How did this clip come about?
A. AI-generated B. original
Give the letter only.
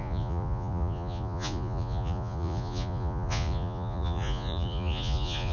A